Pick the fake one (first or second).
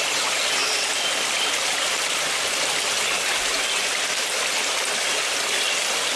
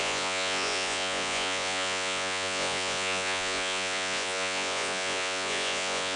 second